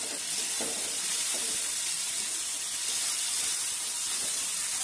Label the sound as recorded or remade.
remade